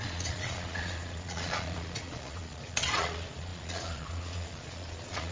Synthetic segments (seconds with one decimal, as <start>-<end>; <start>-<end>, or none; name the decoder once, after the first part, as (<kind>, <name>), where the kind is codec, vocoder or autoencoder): 0.0-5.3 (vocoder, Vocos)